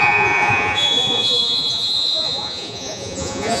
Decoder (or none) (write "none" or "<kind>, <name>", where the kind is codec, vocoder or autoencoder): vocoder, Vocos